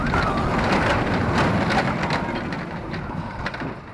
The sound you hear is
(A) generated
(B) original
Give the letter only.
B